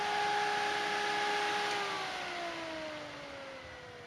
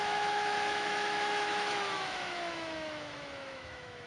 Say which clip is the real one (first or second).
first